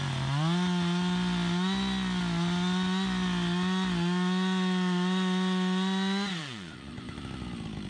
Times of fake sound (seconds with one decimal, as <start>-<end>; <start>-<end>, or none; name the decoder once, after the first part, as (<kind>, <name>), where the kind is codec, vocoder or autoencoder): 6.4-7.2 (vocoder, Vocos)